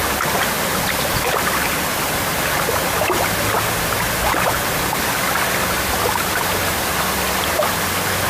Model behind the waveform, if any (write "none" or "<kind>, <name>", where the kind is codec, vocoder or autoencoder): none